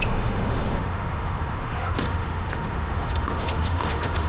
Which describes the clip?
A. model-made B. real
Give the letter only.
A